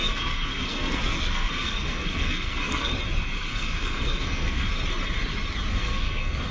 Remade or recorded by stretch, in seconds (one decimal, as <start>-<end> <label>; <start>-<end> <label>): 0.0-2.9 remade; 2.9-3.5 recorded; 3.5-4.7 remade; 4.7-5.7 recorded; 5.7-6.5 remade